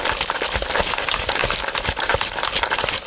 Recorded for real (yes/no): yes